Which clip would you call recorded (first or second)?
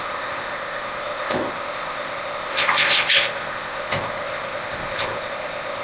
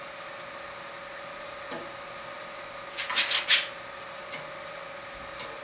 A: second